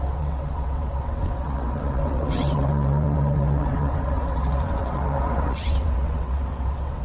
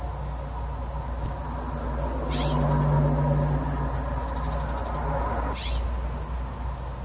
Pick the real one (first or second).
second